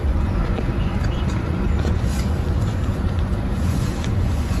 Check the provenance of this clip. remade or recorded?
remade